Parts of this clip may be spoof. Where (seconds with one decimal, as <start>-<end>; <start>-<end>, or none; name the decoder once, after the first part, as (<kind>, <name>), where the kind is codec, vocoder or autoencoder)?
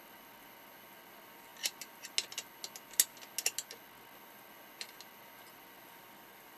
none